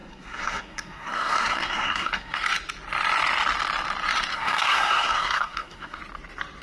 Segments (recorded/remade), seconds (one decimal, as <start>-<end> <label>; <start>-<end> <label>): 0.0-2.4 remade; 2.4-4.3 recorded; 4.3-6.0 remade; 6.0-6.6 recorded